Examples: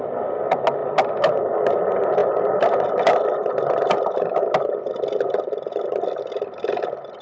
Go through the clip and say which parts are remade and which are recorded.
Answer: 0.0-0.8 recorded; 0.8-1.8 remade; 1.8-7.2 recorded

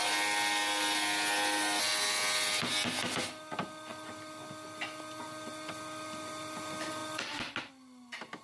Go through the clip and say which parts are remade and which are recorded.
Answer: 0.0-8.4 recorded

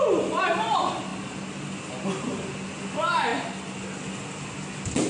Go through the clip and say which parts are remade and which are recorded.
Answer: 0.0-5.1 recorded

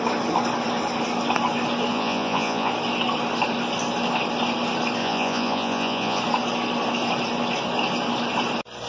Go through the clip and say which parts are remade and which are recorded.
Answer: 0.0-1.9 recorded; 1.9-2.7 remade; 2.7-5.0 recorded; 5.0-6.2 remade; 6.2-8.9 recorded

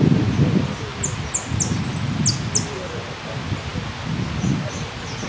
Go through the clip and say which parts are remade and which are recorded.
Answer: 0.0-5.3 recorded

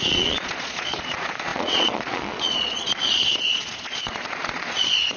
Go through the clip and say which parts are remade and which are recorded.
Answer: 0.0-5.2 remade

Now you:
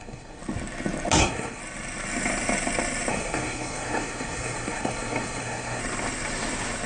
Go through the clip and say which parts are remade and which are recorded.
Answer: 0.0-0.4 remade; 0.4-1.2 recorded; 1.2-1.6 remade; 1.6-3.1 recorded; 3.1-5.8 remade; 5.8-6.9 recorded

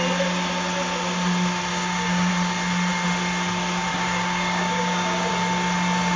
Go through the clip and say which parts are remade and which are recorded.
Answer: 0.0-1.7 recorded; 1.7-2.3 remade; 2.3-3.9 recorded; 3.9-5.3 remade; 5.3-6.2 recorded